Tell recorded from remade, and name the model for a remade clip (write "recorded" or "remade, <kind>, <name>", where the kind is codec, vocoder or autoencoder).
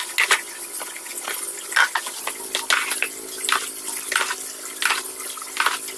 recorded